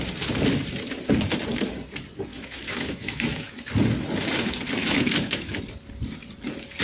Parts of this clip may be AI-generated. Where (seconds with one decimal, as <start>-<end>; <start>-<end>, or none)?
2.3-3.7; 4.8-5.6